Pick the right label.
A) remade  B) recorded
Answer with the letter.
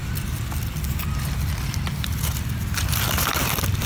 B